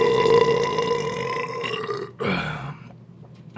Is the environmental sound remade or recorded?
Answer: recorded